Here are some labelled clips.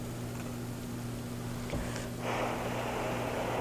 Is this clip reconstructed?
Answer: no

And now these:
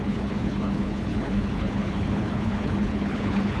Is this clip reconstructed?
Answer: yes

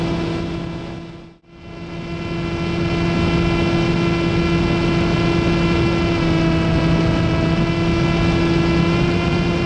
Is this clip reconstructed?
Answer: no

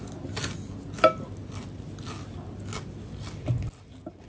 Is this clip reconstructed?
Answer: no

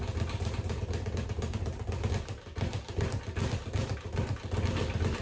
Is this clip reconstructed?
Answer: no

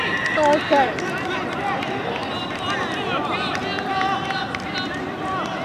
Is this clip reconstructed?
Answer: no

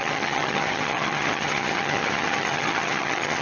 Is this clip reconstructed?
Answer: yes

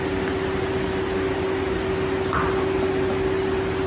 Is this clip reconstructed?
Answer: no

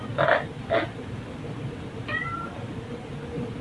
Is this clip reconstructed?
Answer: no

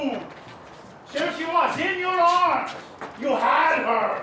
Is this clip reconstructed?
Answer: no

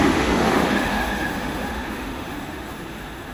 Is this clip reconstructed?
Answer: yes